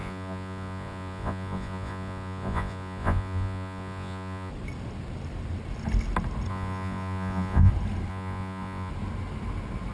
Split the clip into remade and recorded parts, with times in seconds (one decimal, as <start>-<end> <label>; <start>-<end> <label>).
0.0-4.5 remade; 4.5-6.5 recorded; 6.5-7.7 remade; 7.7-8.1 recorded; 8.1-8.9 remade; 8.9-9.9 recorded